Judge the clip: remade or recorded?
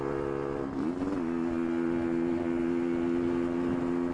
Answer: recorded